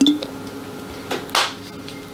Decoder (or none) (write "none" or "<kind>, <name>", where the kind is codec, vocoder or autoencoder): none